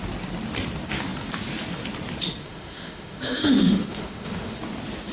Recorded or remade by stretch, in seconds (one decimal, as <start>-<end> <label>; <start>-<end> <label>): 0.0-2.4 recorded; 2.4-4.6 remade; 4.6-5.1 recorded